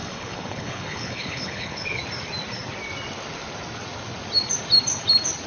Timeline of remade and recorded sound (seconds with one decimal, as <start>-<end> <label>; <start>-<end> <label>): 0.0-2.0 remade; 2.0-5.5 recorded